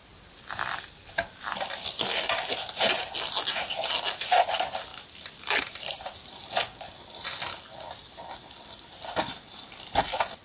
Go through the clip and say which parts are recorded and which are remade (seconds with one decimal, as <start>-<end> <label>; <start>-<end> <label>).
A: 0.0-2.1 remade; 2.1-4.9 recorded; 4.9-10.0 remade; 10.0-10.4 recorded